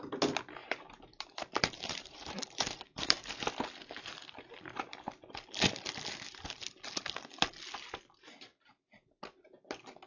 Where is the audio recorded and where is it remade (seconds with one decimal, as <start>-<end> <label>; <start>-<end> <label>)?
0.0-0.6 recorded; 0.6-3.5 remade; 3.5-10.1 recorded